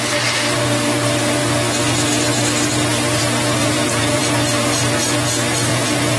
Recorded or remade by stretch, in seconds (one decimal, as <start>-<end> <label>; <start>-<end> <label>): 0.0-3.6 recorded; 3.6-4.2 remade; 4.2-5.7 recorded; 5.7-6.2 remade

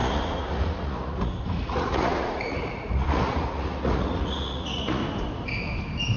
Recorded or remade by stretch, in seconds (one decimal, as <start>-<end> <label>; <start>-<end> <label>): 0.0-5.0 remade; 5.0-6.2 recorded

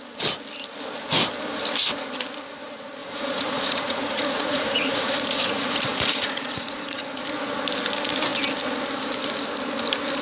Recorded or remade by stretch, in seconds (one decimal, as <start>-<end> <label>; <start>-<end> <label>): 0.0-3.0 recorded; 3.0-7.3 remade; 7.3-10.2 recorded

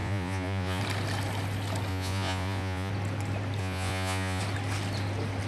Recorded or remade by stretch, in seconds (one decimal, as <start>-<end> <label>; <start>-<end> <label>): 0.0-0.8 remade; 0.8-1.9 recorded; 1.9-2.9 remade; 2.9-3.6 recorded; 3.6-4.4 remade; 4.4-5.5 recorded

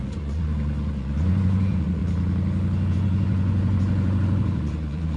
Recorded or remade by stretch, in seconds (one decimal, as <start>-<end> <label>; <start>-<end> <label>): 0.0-2.0 remade; 2.0-2.9 recorded; 2.9-5.2 remade

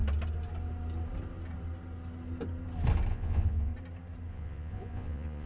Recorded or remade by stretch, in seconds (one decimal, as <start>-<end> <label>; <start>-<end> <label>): 0.0-3.1 recorded; 3.1-3.7 remade; 3.7-4.3 recorded; 4.3-5.5 remade

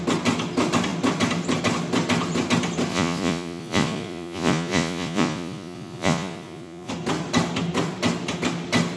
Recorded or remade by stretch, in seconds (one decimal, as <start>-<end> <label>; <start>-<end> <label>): 0.0-2.9 recorded; 2.9-6.9 remade; 6.9-9.0 recorded